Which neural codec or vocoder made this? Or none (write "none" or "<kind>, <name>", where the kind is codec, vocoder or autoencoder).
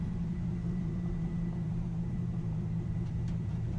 vocoder, BigVGAN v2